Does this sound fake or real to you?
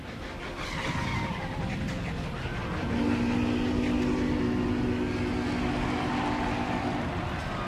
real